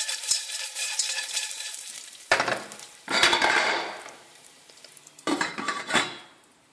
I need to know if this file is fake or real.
fake